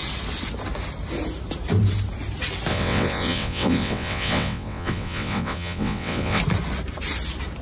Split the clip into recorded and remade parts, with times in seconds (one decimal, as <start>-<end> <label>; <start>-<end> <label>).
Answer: 0.0-2.7 recorded; 2.7-6.4 remade; 6.4-7.6 recorded